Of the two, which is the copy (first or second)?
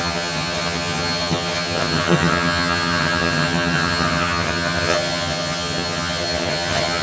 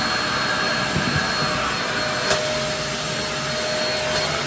first